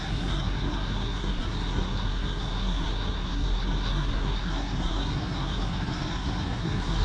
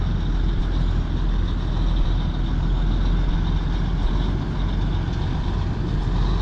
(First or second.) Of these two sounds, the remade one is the first